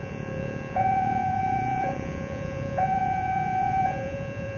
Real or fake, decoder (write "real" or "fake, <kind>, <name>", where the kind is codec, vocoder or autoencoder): fake, vocoder, Vocos